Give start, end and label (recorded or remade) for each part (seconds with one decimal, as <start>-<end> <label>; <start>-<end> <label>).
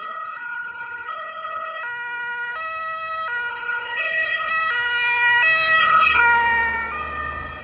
0.0-1.8 remade; 1.8-3.5 recorded; 3.5-4.5 remade; 4.5-5.8 recorded; 5.8-6.2 remade; 6.2-7.6 recorded